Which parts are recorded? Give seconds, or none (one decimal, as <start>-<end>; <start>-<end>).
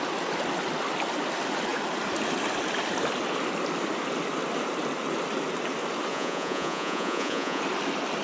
0.0-6.1; 7.6-8.2